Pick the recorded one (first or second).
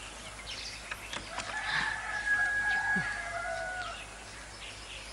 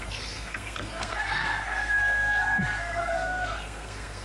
first